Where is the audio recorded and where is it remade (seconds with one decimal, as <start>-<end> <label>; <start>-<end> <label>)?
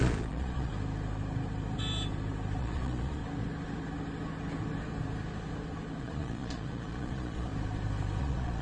0.0-0.7 remade; 0.7-2.6 recorded; 2.6-3.2 remade; 3.2-6.0 recorded; 6.0-7.5 remade; 7.5-8.2 recorded; 8.2-8.6 remade